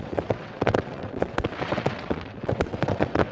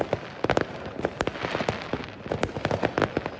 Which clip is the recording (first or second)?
second